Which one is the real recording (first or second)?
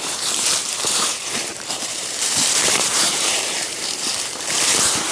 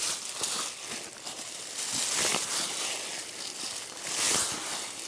second